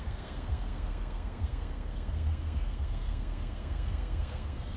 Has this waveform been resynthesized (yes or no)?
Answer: yes